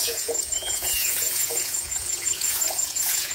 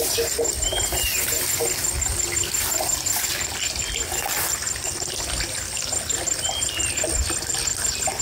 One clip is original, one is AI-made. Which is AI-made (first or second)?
first